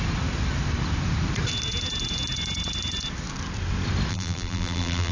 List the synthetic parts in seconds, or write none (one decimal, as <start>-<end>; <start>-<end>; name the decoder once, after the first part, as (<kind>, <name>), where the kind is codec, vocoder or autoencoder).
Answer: 4.1-5.1 (vocoder, BigVGAN v2)